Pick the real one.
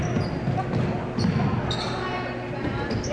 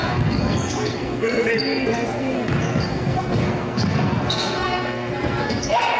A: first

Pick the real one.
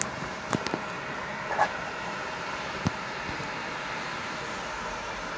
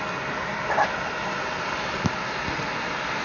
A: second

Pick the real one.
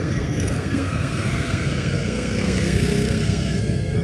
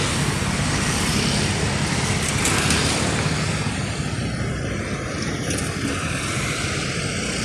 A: second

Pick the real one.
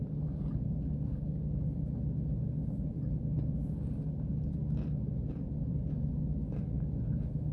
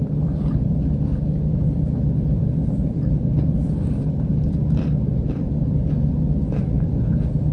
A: first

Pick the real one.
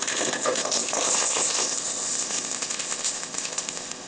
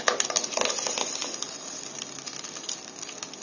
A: second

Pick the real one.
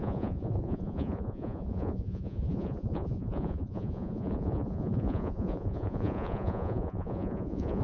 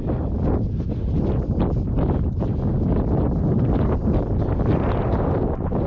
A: second